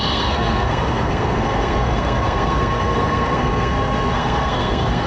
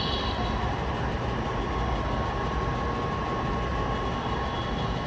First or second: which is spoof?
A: first